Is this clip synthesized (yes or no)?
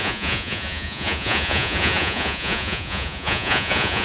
yes